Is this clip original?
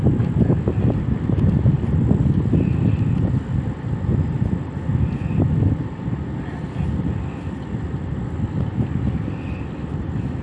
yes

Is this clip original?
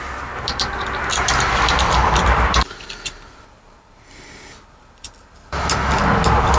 no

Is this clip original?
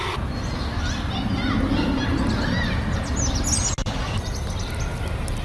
yes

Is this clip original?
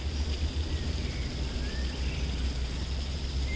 yes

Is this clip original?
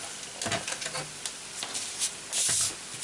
yes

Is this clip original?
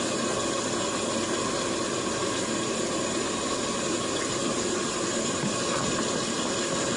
yes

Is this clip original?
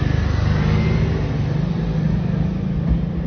yes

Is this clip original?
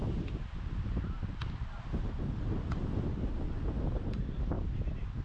yes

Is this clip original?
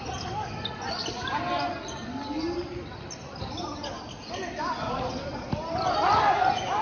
yes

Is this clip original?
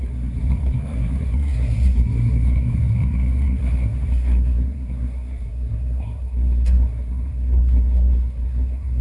no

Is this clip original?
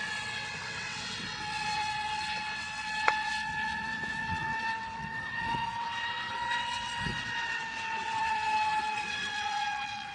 no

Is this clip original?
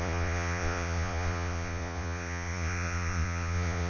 no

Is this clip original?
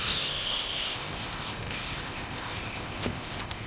no